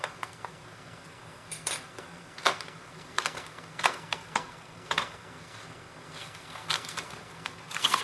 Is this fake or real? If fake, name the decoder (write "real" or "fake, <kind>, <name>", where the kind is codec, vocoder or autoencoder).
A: fake, codec, SNAC